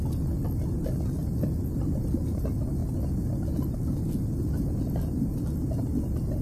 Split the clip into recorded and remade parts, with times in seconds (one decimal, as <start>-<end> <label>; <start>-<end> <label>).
0.0-1.2 recorded; 1.2-2.4 remade; 2.4-6.4 recorded